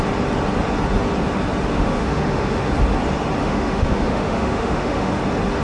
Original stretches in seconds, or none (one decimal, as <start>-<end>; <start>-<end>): 0.0-1.7; 2.7-3.4; 5.1-5.6

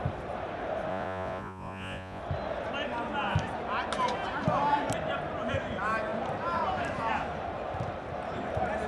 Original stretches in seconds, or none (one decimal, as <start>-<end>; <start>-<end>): 0.0-0.9; 2.2-8.9

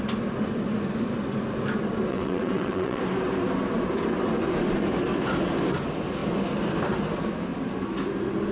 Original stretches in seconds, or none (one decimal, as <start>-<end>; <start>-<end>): 0.0-2.1; 3.0-8.5

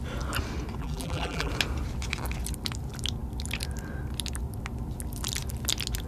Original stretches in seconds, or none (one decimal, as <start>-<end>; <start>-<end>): 0.0-0.8; 1.5-6.1

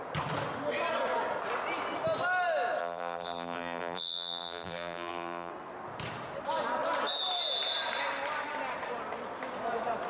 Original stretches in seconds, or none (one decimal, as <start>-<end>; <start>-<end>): 0.0-2.8; 5.5-10.1

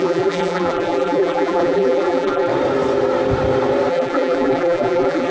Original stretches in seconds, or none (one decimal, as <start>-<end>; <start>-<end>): 2.5-3.9

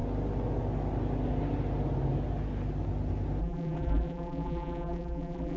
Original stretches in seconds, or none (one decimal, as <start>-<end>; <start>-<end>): 0.0-3.4

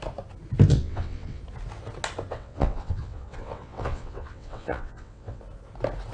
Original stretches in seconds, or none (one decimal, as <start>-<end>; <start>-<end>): 0.0-0.7; 1.4-2.3; 5.4-6.1